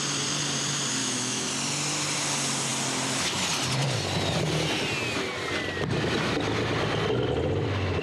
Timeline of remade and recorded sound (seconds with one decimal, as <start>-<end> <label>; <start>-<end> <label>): 0.0-1.0 recorded; 1.0-1.5 remade; 1.5-8.0 recorded